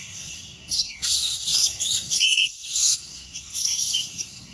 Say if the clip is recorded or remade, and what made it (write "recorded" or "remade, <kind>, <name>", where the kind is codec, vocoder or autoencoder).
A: remade, codec, SNAC